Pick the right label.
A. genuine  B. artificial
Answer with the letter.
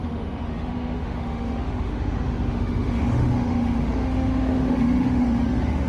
B